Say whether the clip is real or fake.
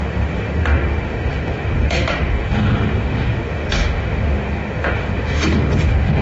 fake